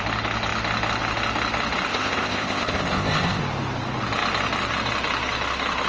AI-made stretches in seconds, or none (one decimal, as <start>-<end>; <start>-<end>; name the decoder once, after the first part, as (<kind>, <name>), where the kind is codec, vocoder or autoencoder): 1.9-3.4 (codec, ZipCodec)